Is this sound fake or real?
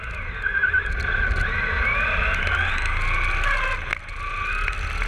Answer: real